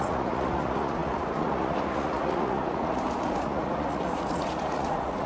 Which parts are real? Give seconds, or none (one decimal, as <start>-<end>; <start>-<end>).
none

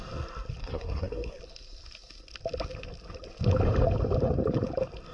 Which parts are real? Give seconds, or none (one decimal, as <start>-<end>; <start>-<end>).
0.0-0.6; 1.4-5.1